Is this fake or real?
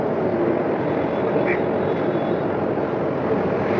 real